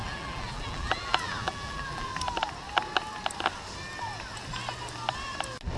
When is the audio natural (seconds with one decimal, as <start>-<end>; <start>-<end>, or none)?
2.1-5.8

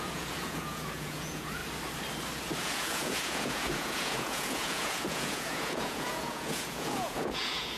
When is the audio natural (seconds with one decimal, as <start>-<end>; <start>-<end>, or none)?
1.6-2.6

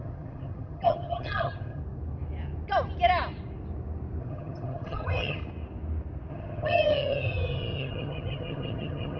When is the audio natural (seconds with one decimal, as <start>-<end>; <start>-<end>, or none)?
1.8-4.2; 5.4-6.3

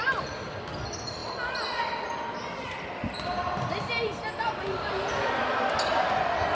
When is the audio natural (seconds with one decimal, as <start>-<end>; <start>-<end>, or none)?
0.0-6.5

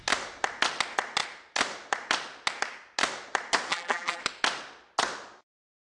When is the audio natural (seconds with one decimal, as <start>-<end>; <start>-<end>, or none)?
0.0-3.7; 4.2-5.8

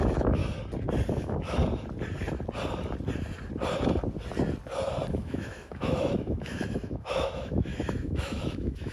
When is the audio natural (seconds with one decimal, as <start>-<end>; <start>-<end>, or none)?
0.4-1.1; 1.6-5.1